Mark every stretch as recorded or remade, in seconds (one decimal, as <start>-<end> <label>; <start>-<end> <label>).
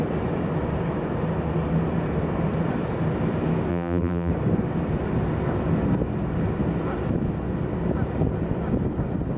0.0-3.7 recorded; 3.7-4.3 remade; 4.3-9.4 recorded